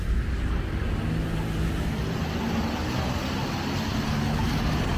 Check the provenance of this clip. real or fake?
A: real